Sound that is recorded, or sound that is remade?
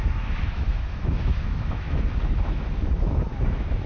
remade